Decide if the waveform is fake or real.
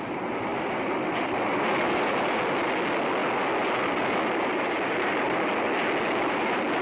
real